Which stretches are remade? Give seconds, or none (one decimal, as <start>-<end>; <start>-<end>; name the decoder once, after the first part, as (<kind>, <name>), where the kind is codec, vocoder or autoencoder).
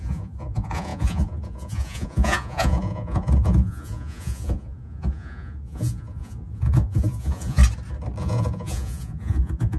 0.0-7.6 (vocoder, Vocos); 8.2-9.8